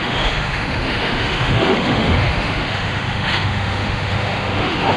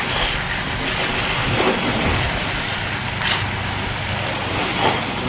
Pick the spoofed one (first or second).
first